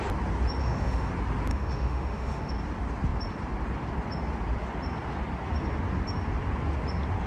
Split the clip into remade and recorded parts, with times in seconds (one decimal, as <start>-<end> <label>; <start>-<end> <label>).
0.0-0.6 recorded; 0.6-1.1 remade; 1.1-1.5 recorded; 1.5-2.5 remade; 2.5-7.3 recorded